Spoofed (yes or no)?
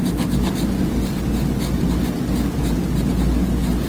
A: no